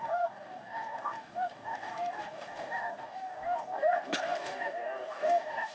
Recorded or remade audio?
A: remade